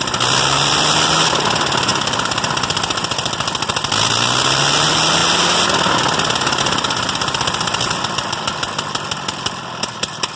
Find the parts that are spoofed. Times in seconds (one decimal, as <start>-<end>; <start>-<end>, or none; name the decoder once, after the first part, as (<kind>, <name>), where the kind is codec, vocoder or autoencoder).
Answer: none